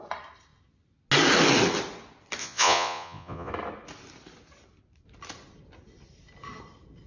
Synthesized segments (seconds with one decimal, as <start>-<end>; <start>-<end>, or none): 2.4-3.5